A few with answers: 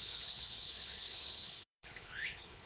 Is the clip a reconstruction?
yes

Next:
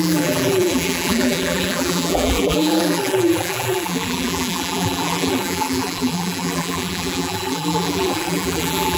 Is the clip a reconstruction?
yes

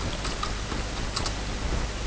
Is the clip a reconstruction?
no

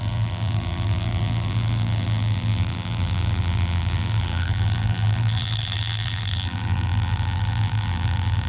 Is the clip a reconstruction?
yes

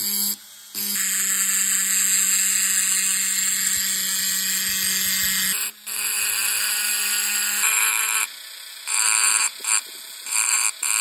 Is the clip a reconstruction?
no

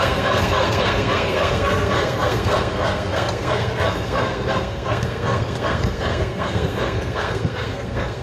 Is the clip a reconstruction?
yes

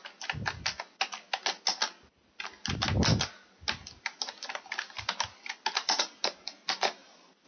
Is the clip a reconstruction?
no